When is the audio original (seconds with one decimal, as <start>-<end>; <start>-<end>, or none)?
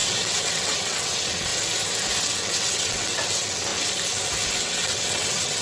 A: 1.5-2.2; 3.7-4.6